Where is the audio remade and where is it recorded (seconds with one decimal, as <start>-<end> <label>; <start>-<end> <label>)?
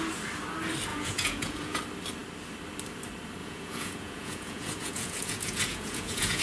0.0-0.9 recorded; 0.9-1.8 remade; 1.8-3.4 recorded; 3.4-6.4 remade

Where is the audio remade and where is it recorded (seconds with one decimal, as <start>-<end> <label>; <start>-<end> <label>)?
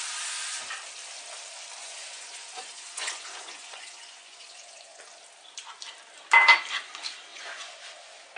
0.0-1.8 recorded; 1.8-5.0 remade; 5.0-7.3 recorded; 7.3-7.8 remade; 7.8-8.4 recorded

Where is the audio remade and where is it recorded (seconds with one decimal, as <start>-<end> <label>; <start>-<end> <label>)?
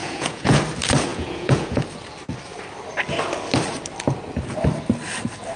0.0-0.6 remade; 0.6-1.1 recorded; 1.1-1.8 remade; 1.8-5.6 recorded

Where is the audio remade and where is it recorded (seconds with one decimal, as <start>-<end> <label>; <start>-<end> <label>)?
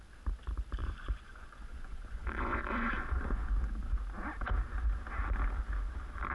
0.0-0.8 recorded; 0.8-3.5 remade; 3.5-6.3 recorded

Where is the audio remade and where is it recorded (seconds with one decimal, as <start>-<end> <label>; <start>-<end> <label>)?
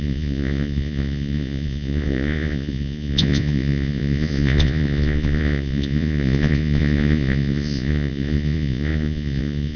0.0-9.8 remade